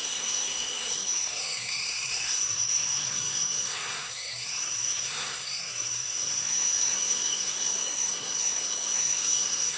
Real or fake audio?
fake